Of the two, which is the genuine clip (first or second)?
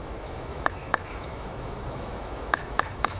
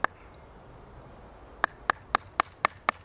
second